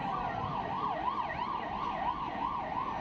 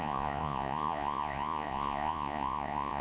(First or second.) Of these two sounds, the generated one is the second